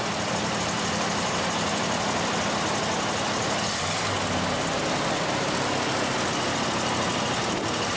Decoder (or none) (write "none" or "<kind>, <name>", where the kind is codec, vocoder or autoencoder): none